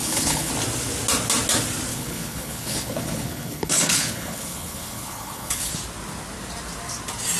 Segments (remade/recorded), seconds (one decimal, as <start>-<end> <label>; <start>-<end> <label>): 0.0-0.5 remade; 0.5-1.9 recorded; 1.9-5.7 remade; 5.7-7.4 recorded